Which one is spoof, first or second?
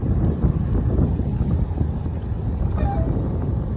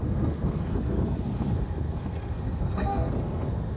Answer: second